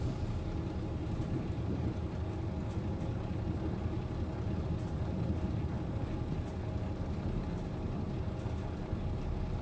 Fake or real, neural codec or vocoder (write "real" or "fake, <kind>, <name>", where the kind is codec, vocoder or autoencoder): real